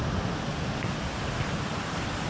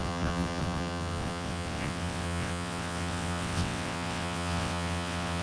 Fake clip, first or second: second